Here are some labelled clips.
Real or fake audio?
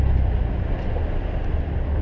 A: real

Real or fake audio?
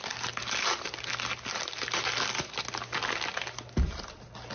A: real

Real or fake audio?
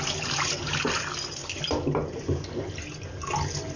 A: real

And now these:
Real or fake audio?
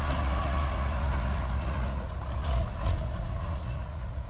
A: fake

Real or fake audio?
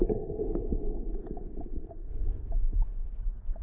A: fake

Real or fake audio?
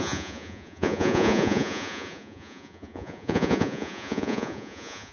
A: fake